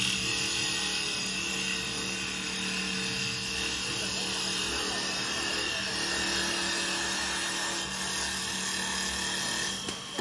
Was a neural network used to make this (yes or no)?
no